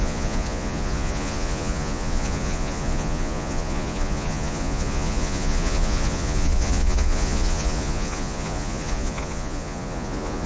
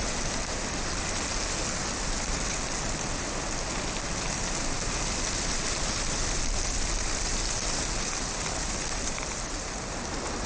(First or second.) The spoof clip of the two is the first